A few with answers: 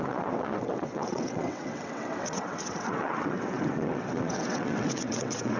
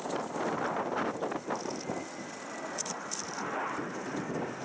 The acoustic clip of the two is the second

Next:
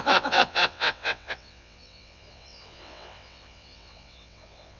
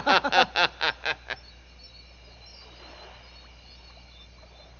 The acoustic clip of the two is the second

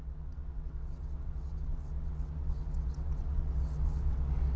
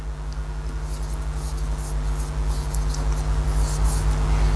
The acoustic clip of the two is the second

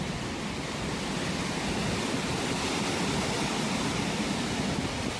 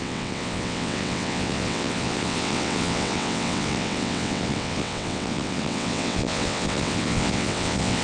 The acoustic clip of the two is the first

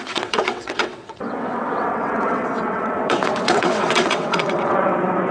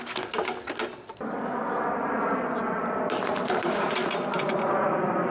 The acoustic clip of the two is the second